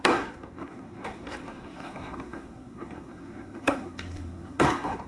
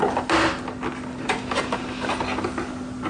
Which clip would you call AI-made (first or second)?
first